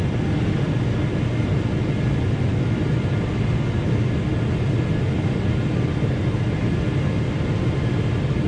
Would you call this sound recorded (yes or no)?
yes